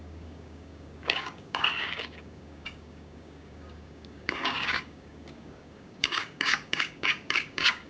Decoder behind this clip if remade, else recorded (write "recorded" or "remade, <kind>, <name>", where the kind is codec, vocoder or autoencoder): remade, codec, DAC